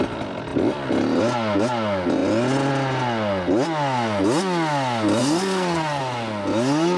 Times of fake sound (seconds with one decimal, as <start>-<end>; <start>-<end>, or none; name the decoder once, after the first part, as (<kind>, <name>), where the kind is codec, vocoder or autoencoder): 5.2-6.0 (codec, SNAC)